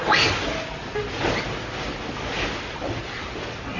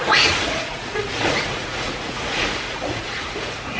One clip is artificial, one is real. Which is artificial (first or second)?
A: second